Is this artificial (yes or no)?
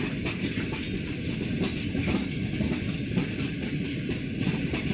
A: no